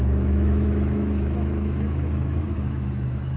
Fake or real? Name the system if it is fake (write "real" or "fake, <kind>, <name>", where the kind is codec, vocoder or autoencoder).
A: fake, autoencoder, DAC-VAE